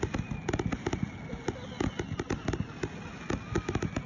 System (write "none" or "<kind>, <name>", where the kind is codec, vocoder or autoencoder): none